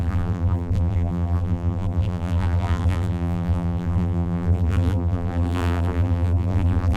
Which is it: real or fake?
fake